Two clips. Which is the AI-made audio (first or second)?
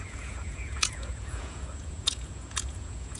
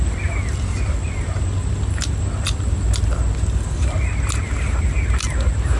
first